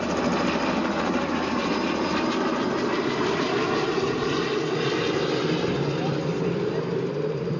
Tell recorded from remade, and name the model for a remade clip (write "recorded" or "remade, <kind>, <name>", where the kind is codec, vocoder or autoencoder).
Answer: recorded